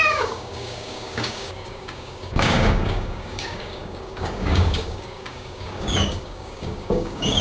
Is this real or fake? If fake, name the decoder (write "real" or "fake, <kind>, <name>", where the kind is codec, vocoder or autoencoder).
fake, codec, DAC